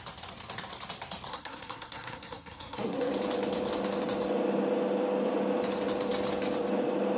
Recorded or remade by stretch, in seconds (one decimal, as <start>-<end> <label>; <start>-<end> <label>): 0.0-1.3 recorded; 1.3-3.1 remade; 3.1-7.2 recorded